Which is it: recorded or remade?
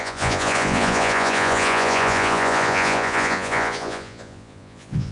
remade